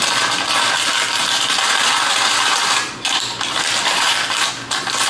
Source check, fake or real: real